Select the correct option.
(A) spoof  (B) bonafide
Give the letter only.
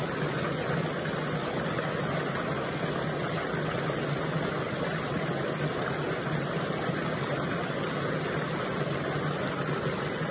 B